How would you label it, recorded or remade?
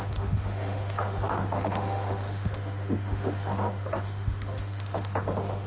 remade